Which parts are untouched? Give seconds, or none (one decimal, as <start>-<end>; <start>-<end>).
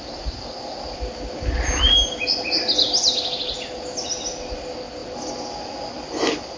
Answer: 0.0-6.6